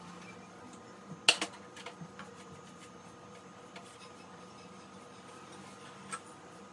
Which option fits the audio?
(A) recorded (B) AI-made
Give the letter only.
A